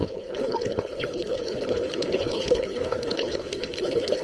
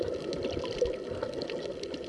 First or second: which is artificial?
first